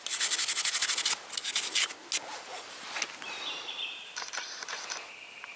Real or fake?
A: real